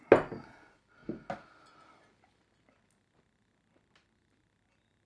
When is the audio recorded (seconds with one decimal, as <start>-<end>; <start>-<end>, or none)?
0.0-5.1